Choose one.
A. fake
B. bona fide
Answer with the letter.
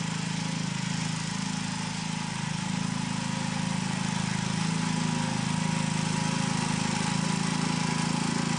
B